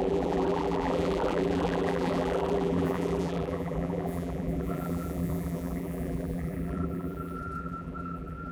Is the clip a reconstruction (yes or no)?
yes